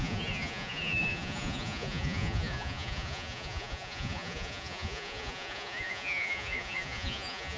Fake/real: fake